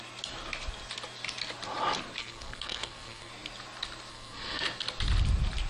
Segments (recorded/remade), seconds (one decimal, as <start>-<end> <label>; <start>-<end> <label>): 0.0-2.2 recorded; 2.2-3.3 remade; 3.3-4.1 recorded; 4.1-4.6 remade; 4.6-5.7 recorded